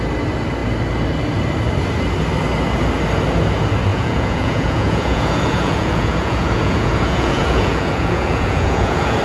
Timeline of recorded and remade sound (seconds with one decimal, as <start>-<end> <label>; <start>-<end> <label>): 0.0-3.9 recorded; 3.9-9.2 remade